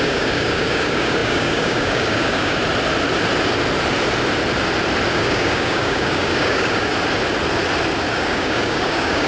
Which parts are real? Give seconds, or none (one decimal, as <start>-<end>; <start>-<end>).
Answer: 2.6-5.1; 6.9-8.1